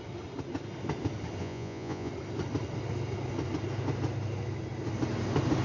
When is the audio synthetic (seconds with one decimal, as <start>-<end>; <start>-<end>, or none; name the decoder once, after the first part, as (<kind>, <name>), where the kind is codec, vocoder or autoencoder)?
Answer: 1.4-2.1 (vocoder, Vocos)